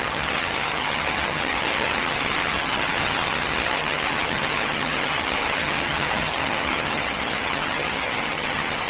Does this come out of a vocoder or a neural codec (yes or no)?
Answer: yes